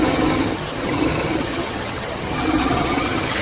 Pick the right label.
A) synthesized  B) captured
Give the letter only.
A